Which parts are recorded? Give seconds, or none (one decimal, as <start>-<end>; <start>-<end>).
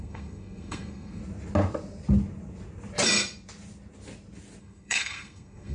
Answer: 1.2-4.6